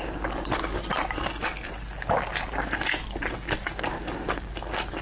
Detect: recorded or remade recorded